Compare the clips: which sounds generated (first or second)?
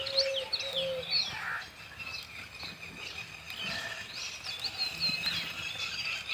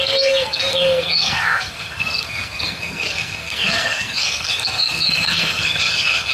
second